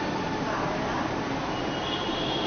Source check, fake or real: real